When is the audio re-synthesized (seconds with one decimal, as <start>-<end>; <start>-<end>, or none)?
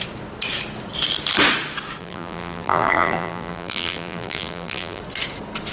2.0-5.0